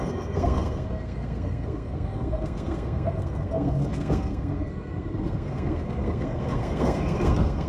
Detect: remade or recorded remade